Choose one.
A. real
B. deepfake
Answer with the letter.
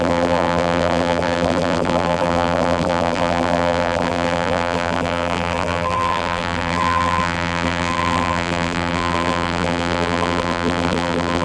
B